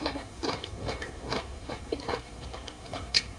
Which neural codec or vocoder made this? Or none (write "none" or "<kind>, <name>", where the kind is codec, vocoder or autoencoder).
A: codec, SNAC